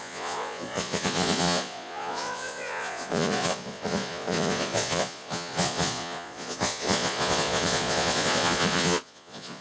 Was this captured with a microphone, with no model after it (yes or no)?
no